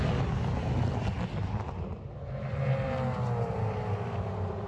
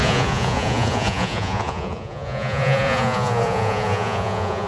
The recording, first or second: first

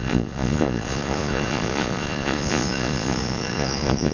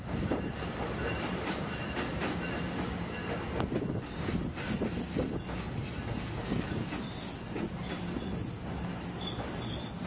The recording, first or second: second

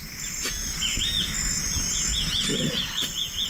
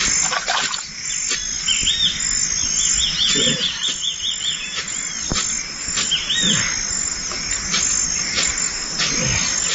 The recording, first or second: second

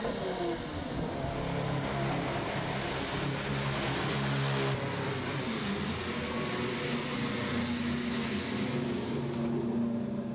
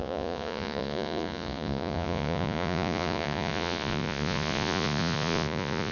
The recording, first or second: first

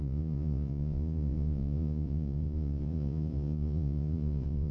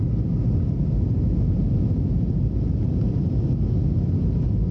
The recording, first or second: second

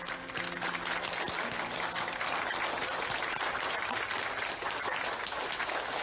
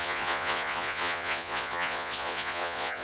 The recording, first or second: first